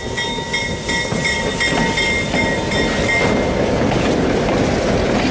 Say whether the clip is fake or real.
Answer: real